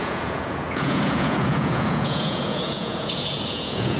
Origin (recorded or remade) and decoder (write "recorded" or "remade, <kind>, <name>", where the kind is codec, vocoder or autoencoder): remade, vocoder, Vocos